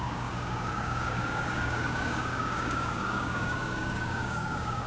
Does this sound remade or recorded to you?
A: remade